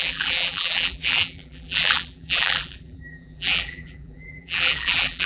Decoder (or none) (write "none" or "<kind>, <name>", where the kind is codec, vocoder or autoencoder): vocoder, BigVGAN v2